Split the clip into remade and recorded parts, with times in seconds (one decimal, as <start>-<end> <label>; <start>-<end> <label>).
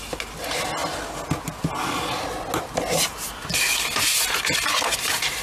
0.0-5.4 recorded